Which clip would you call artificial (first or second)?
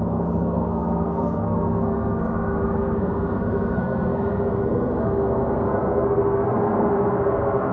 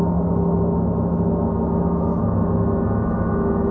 first